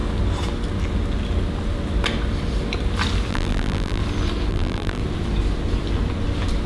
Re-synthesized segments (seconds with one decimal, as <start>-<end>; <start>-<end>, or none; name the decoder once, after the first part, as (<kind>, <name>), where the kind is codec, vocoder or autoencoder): 3.3-4.0 (vocoder, BigVGAN v2); 4.5-5.0